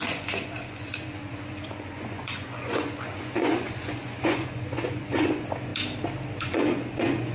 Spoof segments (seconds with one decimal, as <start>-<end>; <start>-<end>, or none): 0.0-5.7; 6.4-7.3